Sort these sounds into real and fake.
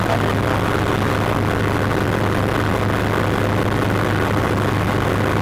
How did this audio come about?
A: real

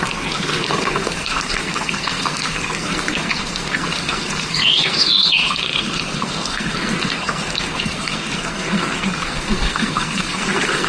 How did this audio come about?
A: fake